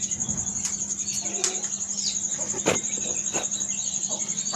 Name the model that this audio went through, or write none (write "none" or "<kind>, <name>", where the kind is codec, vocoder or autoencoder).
none